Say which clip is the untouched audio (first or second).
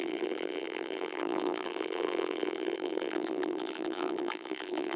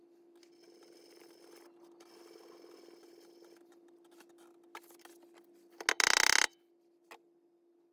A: second